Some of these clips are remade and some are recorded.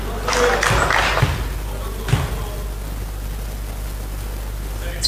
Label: recorded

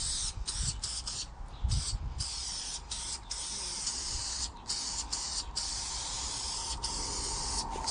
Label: recorded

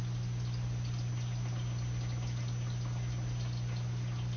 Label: recorded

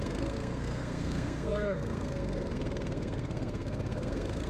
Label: remade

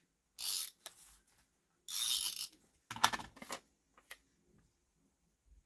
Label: recorded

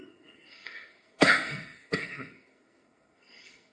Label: remade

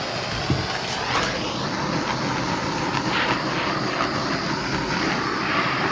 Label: recorded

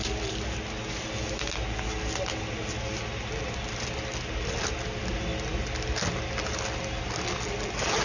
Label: recorded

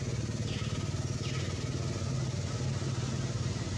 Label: recorded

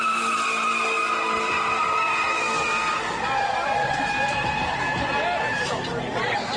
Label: recorded